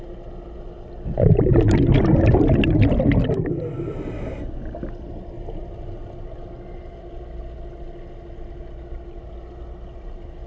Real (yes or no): yes